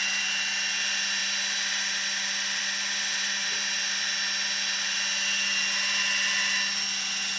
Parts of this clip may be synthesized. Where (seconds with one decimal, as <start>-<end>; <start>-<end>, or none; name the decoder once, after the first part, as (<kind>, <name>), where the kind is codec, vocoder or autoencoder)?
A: none

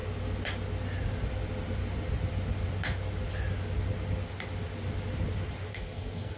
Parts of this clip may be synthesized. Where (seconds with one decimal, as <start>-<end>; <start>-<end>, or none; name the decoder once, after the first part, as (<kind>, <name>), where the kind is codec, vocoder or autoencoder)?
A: 5.7-6.4 (codec, SNAC)

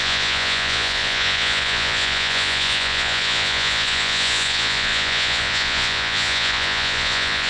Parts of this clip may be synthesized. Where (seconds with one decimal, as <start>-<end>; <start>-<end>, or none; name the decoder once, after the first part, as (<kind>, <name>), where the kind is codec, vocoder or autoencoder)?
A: 0.0-7.5 (vocoder, Vocos)

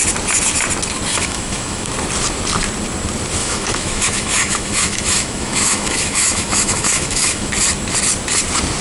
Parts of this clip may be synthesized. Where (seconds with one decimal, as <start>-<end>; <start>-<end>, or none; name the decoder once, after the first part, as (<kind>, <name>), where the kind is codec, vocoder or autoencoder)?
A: 1.1-1.9 (autoencoder, DAC-VAE); 3.4-7.5